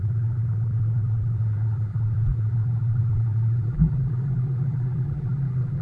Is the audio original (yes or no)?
no